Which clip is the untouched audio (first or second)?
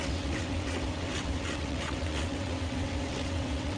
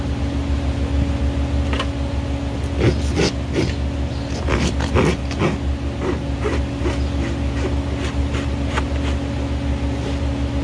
second